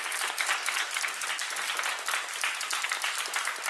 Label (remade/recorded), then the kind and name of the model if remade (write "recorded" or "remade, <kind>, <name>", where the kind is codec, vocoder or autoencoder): recorded